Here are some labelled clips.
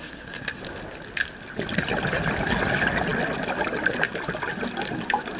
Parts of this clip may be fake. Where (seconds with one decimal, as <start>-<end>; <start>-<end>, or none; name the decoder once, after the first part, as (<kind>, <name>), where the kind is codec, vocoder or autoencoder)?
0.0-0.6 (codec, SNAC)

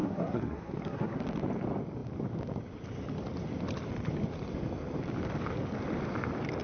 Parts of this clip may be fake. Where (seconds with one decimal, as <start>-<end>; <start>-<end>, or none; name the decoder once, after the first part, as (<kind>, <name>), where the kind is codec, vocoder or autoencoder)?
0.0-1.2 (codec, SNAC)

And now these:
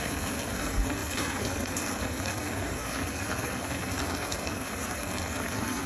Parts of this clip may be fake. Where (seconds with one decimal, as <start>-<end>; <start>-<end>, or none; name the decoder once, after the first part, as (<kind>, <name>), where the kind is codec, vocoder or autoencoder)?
0.0-5.9 (codec, SNAC)

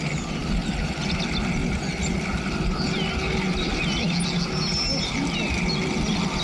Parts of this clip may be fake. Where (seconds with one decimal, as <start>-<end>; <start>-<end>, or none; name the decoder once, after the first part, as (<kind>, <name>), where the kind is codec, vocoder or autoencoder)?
none